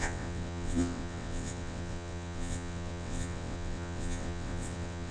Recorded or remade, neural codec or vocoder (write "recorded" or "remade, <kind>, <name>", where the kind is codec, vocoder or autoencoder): remade, vocoder, WaveNeXt